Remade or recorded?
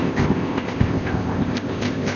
remade